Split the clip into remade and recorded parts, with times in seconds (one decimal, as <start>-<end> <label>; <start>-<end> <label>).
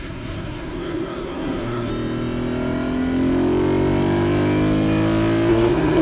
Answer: 0.0-1.9 remade; 1.9-5.5 recorded; 5.5-6.0 remade